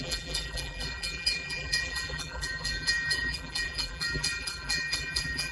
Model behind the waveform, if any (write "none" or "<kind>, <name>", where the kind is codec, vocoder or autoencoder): vocoder, BigVGAN v2